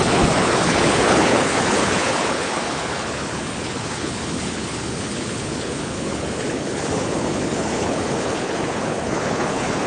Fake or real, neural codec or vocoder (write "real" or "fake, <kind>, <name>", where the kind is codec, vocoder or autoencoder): fake, codec, HILCodec